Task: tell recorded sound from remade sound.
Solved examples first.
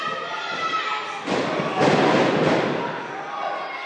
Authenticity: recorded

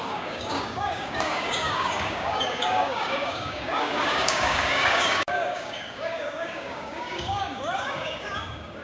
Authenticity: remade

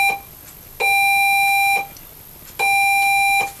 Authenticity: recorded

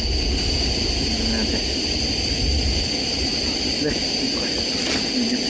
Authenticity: recorded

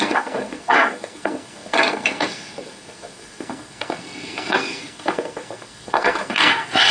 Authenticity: remade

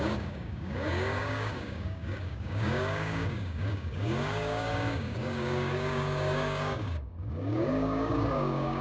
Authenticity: remade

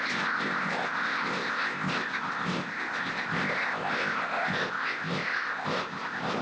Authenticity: remade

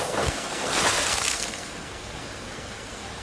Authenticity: remade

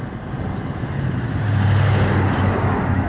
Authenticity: recorded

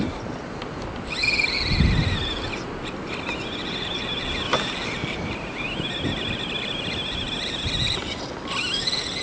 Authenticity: recorded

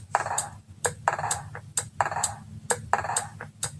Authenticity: recorded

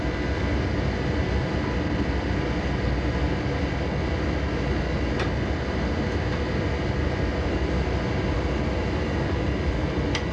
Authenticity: recorded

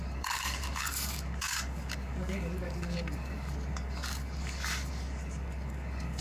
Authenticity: remade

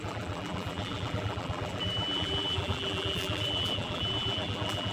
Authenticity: remade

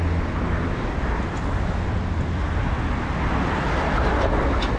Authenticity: recorded